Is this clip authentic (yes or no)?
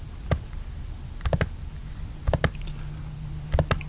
yes